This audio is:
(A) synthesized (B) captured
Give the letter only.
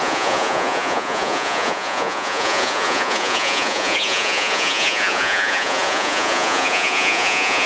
A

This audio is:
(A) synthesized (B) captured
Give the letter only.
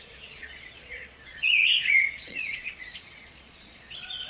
A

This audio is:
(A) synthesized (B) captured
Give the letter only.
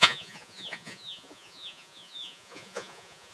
A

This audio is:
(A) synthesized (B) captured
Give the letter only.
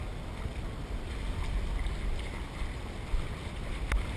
B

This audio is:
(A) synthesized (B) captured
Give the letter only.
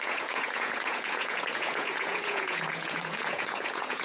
A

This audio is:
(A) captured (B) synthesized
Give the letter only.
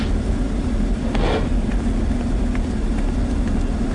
A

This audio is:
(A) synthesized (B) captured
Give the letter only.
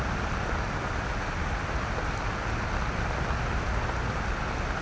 B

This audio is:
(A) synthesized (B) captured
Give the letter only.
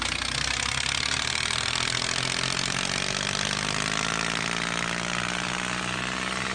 B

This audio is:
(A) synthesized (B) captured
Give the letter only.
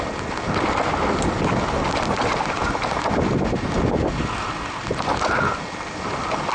B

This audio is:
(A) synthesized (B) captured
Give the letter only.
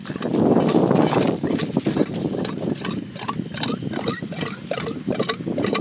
B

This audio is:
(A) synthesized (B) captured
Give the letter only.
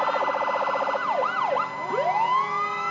B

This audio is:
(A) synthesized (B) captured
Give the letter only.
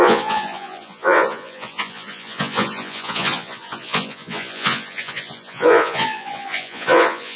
A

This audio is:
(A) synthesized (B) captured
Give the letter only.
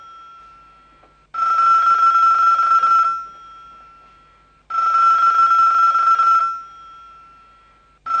B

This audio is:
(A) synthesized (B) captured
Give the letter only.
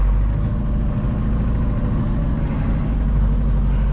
B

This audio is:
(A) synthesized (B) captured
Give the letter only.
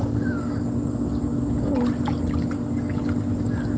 B